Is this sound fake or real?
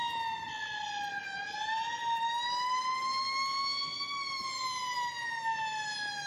real